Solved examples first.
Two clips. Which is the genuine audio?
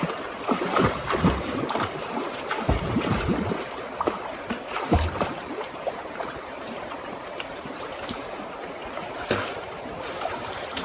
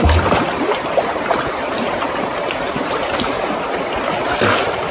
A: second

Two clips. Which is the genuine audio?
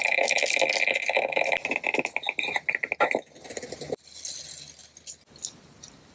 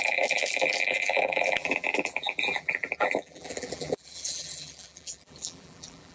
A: first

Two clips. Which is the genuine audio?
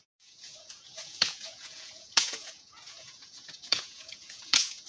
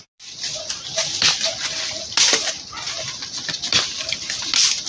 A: second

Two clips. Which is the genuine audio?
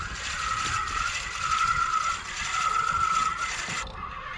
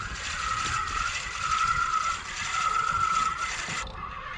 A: first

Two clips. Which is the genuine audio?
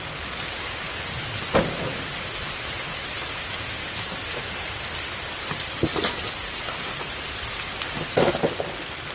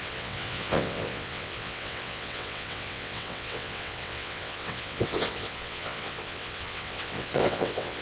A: first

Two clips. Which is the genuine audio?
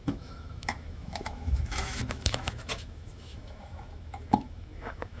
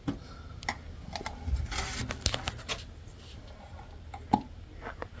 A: second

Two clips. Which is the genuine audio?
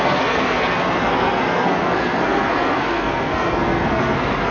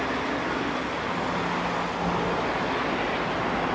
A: second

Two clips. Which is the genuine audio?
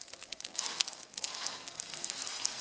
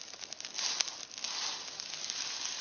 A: second